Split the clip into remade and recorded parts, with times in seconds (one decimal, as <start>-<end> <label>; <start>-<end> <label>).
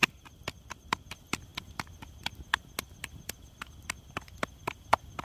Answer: 0.0-5.2 recorded